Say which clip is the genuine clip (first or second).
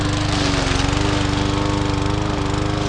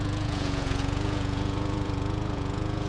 first